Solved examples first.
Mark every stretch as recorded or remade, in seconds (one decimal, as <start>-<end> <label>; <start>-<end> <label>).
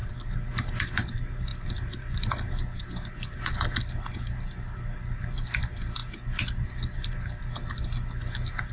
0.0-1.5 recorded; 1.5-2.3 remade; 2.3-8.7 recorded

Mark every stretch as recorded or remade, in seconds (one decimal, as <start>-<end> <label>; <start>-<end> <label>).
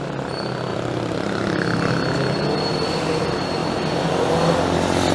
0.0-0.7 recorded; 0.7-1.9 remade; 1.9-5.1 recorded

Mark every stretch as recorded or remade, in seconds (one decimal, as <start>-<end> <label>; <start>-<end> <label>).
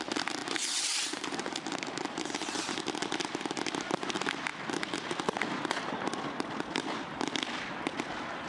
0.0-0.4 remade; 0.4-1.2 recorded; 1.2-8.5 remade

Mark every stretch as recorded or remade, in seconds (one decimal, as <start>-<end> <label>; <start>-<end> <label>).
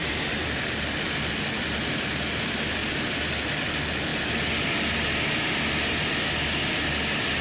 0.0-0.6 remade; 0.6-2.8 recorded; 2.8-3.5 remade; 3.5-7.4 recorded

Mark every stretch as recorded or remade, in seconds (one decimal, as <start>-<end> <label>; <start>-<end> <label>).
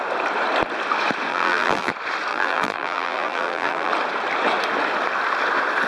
0.0-1.3 recorded; 1.3-1.9 remade; 1.9-2.3 recorded; 2.3-3.9 remade; 3.9-5.9 recorded